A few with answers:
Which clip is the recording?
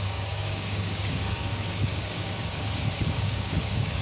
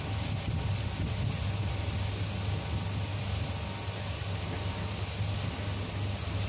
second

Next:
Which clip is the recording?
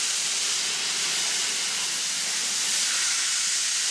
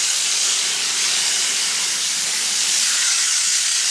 first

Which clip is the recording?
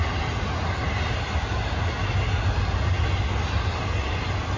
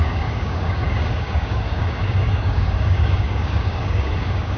first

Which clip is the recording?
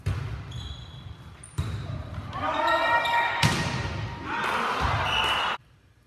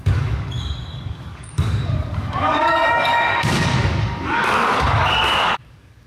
first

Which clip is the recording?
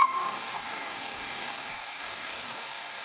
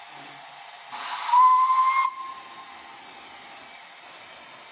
second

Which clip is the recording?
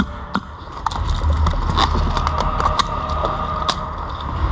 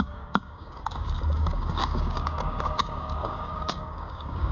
first